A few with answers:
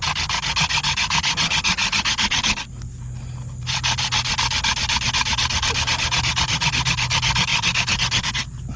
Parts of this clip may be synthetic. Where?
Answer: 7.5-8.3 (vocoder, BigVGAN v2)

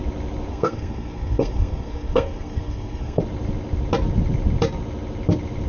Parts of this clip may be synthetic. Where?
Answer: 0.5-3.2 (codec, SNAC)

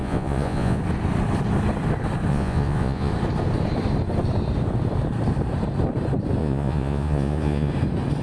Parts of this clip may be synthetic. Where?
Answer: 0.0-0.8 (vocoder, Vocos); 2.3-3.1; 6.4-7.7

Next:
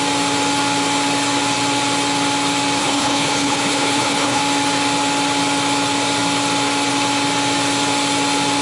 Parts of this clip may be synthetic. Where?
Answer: 2.8-4.4 (codec, HILCodec)

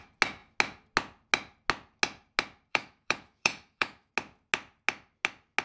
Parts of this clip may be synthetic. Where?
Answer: 2.7-4.1 (autoencoder, DAC-VAE)

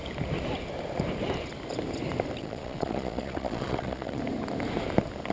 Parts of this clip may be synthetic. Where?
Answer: 2.4-4.2 (vocoder, Vocos)